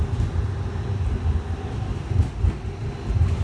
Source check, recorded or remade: recorded